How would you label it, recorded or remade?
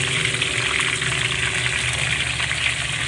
recorded